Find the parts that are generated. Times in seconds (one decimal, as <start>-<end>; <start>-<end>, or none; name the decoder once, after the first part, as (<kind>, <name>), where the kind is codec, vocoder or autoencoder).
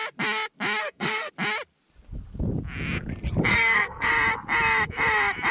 0.8-1.3 (codec, SNAC); 3.5-4.1